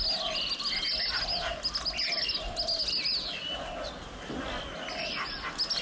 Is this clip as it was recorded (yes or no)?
yes